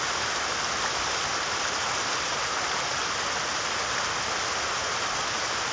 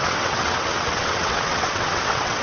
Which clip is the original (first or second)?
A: first